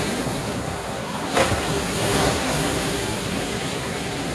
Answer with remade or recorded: remade